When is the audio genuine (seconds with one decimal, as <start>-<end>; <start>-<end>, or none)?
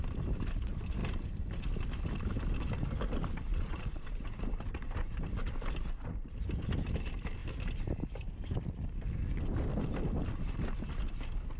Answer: 0.0-3.5; 4.1-11.6